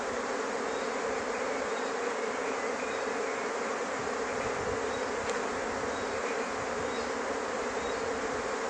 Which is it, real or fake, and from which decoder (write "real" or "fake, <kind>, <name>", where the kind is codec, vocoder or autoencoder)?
real